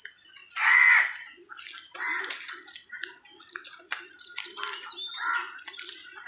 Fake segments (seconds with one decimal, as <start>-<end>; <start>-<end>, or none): none